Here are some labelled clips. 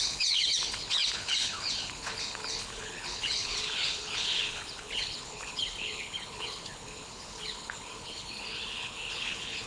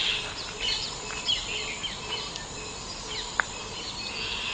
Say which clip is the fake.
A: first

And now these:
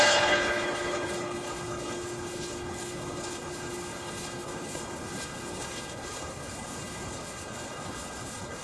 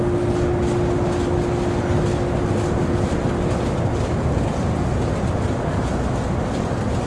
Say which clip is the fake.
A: first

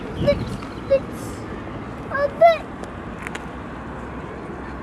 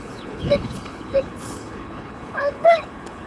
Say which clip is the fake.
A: second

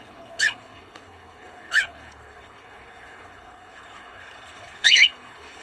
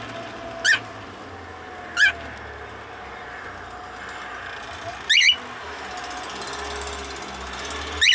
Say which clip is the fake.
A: first